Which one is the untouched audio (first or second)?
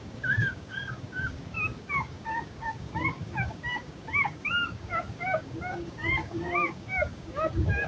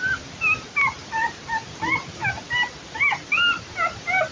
second